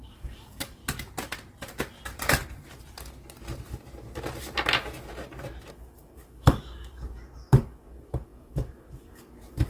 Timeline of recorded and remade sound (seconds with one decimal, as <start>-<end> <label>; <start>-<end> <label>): 0.0-0.8 remade; 0.8-5.7 recorded; 5.7-9.7 remade